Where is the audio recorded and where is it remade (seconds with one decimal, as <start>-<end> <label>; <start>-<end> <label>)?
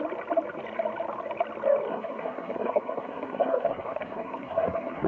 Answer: 0.0-1.9 recorded; 1.9-5.1 remade